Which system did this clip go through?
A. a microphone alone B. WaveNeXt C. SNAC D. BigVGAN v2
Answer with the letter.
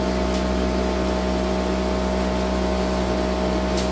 A